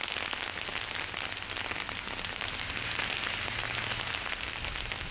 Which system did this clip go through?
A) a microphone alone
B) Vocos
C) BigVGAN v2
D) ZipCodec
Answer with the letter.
A